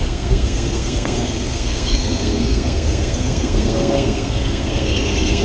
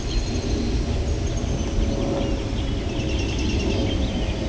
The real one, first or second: second